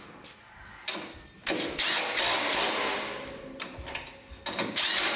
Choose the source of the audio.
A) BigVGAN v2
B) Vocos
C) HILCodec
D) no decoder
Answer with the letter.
D